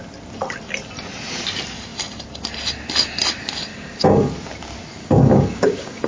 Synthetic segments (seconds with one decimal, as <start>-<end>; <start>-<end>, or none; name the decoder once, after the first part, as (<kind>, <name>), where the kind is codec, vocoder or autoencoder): 3.7-4.3 (codec, DAC); 5.0-6.1